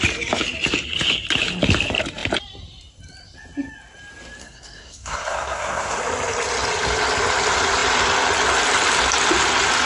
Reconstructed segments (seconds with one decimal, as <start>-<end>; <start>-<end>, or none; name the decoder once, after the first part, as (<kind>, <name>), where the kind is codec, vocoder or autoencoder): 4.4-6.0 (codec, SNAC)